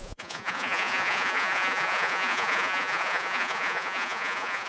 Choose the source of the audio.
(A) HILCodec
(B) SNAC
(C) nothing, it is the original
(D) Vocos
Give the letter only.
D